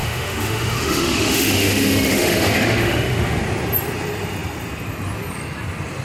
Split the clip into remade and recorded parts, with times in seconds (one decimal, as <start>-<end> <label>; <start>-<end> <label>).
0.0-3.4 remade; 3.4-6.0 recorded